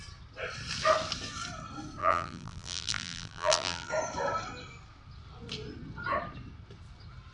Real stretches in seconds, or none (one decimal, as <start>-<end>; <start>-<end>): 0.0-2.0; 3.9-7.3